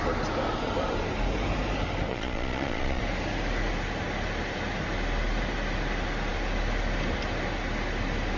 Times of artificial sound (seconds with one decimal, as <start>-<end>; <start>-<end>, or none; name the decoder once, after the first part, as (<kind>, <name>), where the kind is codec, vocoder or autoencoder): 2.1-3.0 (vocoder, Vocos)